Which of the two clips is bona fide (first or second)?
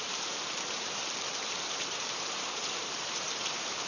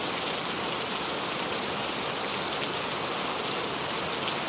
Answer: second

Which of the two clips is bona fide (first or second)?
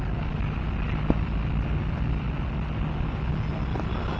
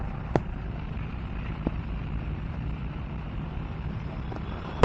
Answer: first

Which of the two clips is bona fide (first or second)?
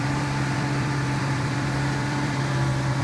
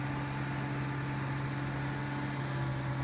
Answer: second